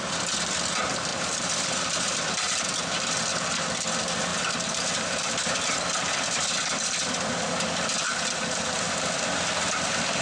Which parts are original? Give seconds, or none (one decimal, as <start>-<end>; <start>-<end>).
0.0-1.1; 2.6-4.3; 5.8-10.2